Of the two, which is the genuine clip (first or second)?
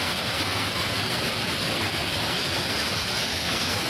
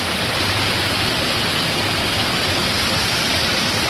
second